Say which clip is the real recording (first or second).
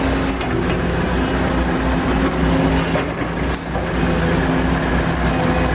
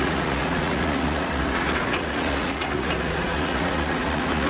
first